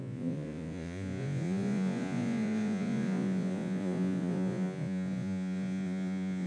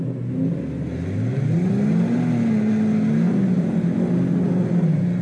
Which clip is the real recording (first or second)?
second